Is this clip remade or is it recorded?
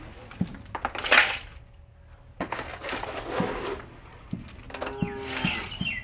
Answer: recorded